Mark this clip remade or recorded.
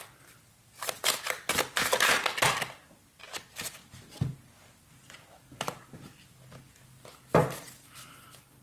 recorded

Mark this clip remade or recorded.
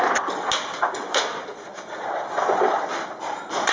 recorded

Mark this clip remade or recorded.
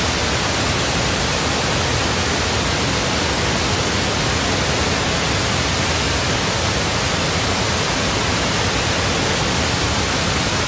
recorded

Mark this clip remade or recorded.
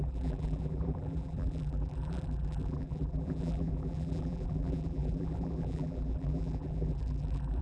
remade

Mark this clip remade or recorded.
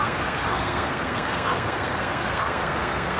remade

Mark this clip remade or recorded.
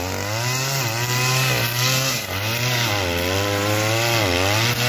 recorded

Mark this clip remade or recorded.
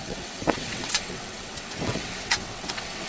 remade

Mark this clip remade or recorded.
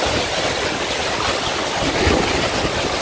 recorded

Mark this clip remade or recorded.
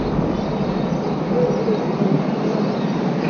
recorded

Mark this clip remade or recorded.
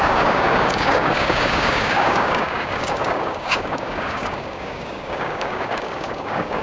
remade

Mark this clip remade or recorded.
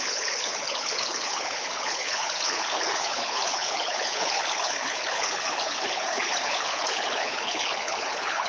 remade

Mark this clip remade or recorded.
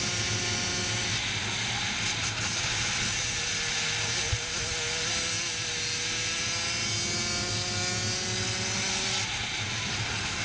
recorded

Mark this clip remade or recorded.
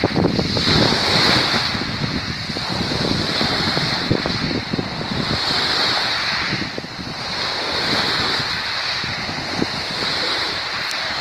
recorded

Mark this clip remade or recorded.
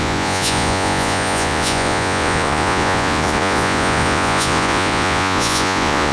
remade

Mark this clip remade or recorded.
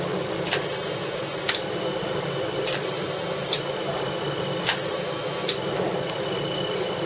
recorded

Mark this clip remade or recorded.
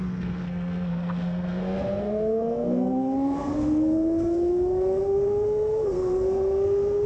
remade